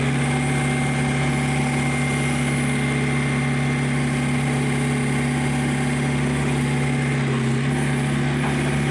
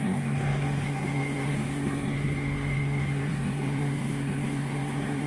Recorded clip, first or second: first